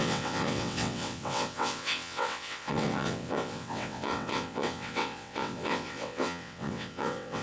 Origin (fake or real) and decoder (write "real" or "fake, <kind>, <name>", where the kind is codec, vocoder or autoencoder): fake, vocoder, WaveNeXt